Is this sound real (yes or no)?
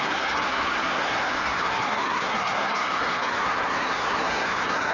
no